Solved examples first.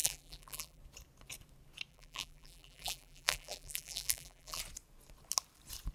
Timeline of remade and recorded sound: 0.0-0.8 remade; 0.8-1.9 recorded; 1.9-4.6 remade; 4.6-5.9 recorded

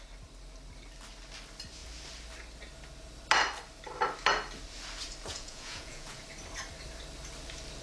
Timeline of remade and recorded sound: 0.0-5.3 recorded; 5.3-6.2 remade; 6.2-7.8 recorded

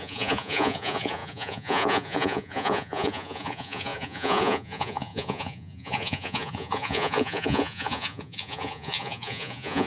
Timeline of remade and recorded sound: 0.0-9.9 remade

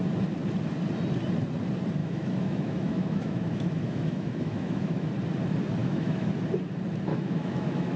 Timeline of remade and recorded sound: 0.0-2.0 recorded; 2.0-5.1 remade; 5.1-5.8 recorded; 5.8-6.3 remade; 6.3-7.1 recorded; 7.1-8.0 remade

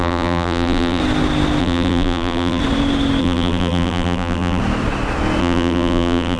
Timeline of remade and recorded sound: 0.0-1.0 remade; 1.0-1.6 recorded; 1.6-2.6 remade; 2.6-3.2 recorded; 3.2-4.6 remade; 4.6-5.4 recorded; 5.4-6.4 remade